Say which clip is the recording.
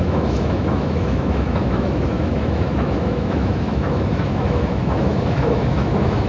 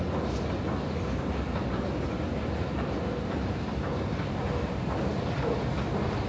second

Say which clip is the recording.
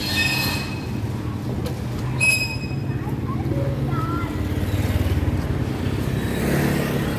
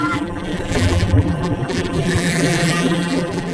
first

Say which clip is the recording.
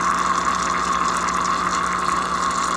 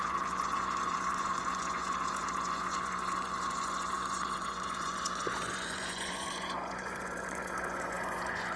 first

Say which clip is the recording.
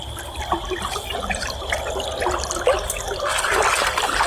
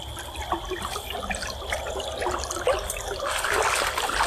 first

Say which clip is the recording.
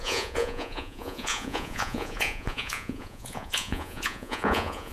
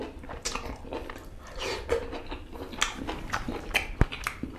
second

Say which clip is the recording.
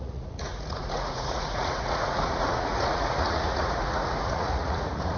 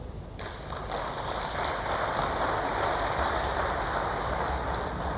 second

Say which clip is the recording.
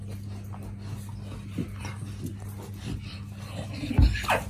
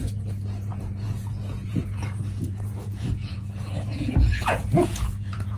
first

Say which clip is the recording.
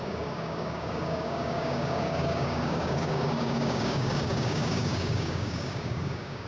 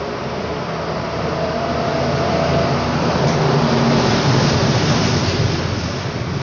second